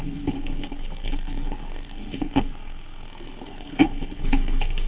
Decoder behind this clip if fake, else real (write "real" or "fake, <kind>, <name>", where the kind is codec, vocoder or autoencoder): fake, codec, SNAC